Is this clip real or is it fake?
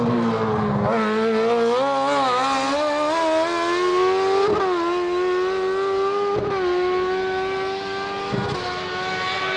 real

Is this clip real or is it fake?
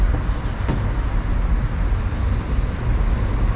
real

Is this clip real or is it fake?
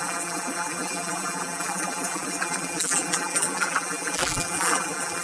fake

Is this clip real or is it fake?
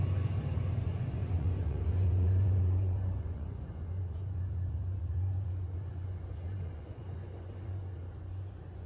fake